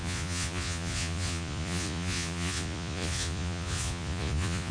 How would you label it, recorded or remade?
remade